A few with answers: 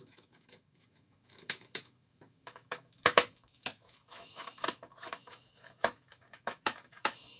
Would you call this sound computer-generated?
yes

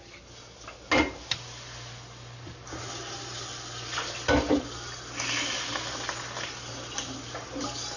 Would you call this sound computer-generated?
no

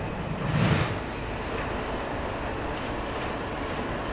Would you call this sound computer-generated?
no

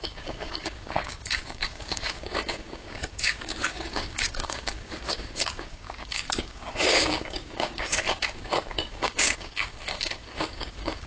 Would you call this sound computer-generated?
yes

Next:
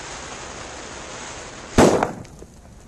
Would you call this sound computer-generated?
no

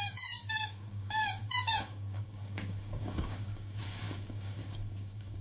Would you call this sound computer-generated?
yes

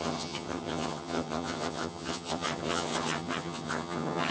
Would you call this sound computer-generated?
yes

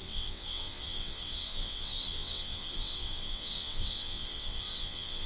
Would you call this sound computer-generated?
yes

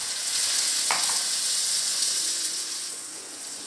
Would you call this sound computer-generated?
yes